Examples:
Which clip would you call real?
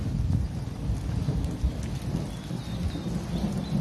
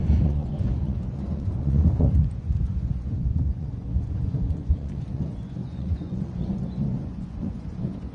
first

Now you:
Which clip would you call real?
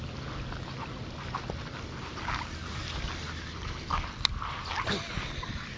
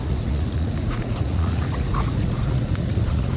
first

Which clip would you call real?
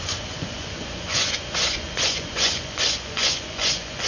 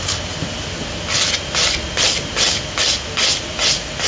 second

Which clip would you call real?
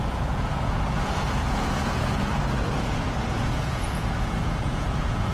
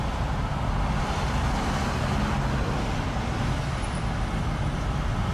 second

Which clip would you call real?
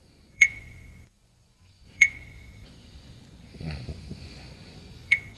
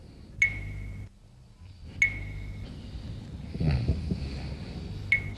second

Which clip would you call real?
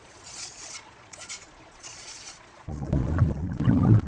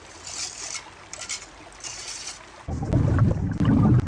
second